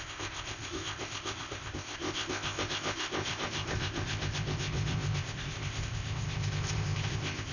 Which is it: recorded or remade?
remade